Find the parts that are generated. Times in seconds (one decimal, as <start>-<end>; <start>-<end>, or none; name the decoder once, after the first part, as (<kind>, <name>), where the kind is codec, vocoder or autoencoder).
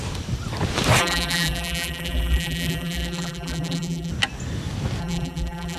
1.0-4.1 (vocoder, BigVGAN v2); 5.0-5.8